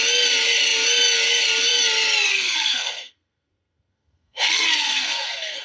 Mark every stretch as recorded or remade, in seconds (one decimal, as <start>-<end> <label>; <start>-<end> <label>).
0.0-2.3 recorded; 2.3-5.6 remade